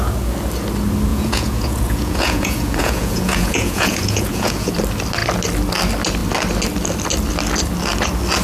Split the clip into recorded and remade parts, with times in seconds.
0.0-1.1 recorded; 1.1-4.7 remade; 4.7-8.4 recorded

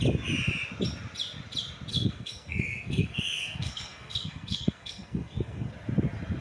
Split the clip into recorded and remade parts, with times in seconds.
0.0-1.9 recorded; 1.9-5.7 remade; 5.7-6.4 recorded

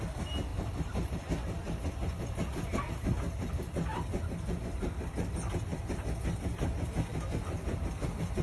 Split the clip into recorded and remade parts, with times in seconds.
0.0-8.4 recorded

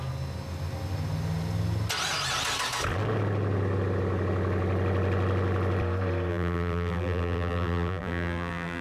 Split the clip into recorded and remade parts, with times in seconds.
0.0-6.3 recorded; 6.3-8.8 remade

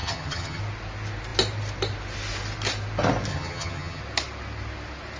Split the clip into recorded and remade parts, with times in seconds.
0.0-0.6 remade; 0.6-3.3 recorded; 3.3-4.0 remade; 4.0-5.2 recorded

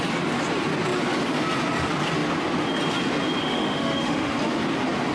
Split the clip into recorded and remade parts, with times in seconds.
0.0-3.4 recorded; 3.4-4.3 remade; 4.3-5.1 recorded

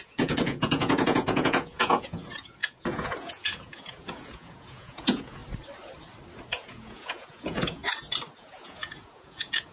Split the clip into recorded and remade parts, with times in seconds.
0.0-5.4 remade; 5.4-6.6 recorded; 6.6-7.8 remade; 7.8-8.4 recorded; 8.4-9.7 remade